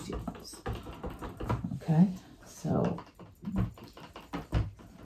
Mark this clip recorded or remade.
recorded